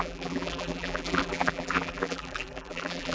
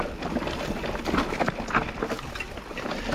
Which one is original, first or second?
second